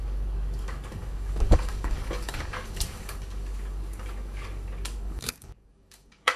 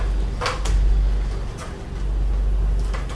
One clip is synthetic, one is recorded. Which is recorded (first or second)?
second